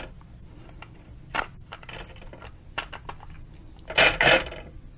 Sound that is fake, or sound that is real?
real